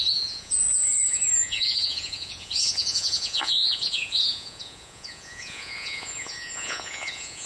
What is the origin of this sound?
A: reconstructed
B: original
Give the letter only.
A